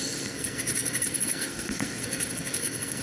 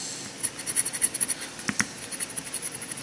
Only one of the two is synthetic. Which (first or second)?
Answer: first